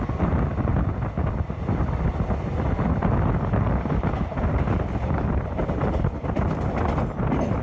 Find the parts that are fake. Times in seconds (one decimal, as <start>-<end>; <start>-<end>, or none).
none